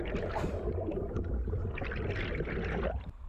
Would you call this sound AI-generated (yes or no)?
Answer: no